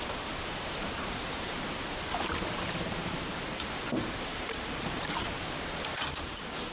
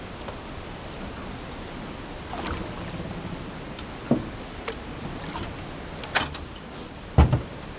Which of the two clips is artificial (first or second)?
first